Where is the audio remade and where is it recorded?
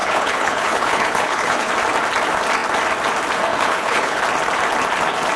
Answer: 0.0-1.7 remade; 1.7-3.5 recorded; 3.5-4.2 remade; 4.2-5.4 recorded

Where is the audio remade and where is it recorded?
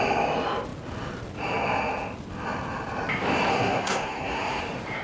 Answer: 0.0-3.5 recorded; 3.5-4.6 remade; 4.6-5.0 recorded